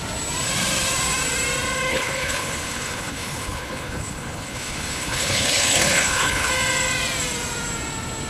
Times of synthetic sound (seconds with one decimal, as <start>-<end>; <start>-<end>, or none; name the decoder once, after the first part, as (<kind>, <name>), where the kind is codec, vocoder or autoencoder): 1.9-6.5 (codec, HILCodec)